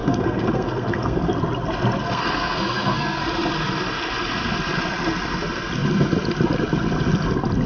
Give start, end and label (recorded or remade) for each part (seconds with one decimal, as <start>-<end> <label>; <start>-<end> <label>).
0.0-1.3 remade; 1.3-2.0 recorded; 2.0-3.2 remade; 3.2-7.7 recorded